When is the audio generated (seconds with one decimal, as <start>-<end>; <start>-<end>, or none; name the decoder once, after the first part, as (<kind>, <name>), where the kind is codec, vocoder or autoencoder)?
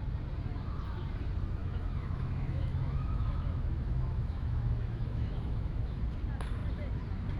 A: 1.6-6.0 (autoencoder, DAC-VAE)